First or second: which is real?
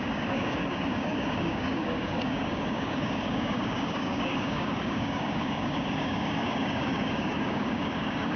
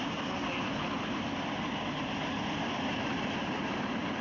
second